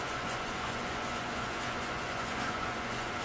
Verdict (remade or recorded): remade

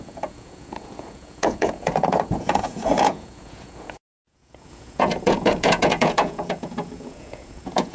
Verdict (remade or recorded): remade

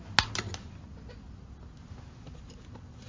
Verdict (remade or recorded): recorded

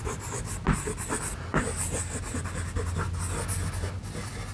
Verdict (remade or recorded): recorded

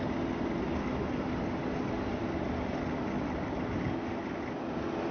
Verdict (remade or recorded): recorded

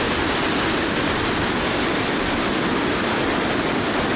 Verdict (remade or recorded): recorded